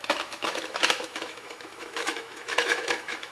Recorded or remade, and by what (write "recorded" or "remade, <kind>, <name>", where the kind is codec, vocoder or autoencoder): remade, autoencoder, DAC-VAE